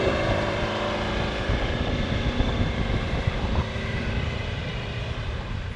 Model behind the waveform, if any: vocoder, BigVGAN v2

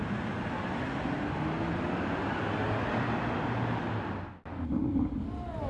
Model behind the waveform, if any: none